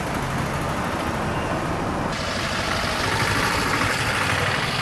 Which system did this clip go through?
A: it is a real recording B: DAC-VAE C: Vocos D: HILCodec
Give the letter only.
A